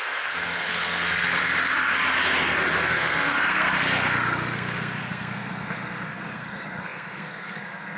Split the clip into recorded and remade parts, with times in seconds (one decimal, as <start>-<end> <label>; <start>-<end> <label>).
0.0-1.4 remade; 1.4-2.8 recorded; 2.8-8.0 remade